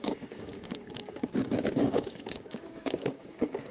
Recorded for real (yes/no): no